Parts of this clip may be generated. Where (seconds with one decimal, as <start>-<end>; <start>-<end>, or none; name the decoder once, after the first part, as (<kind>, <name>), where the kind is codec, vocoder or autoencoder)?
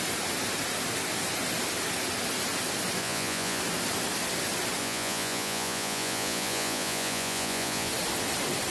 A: 3.0-3.6 (vocoder, Vocos); 4.8-7.9